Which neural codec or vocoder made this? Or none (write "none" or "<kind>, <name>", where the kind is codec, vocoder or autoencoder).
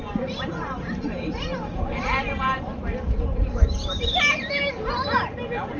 vocoder, BigVGAN v2